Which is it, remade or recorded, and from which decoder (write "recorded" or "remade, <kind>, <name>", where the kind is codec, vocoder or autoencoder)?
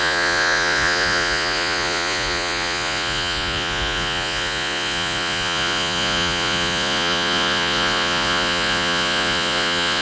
remade, vocoder, Vocos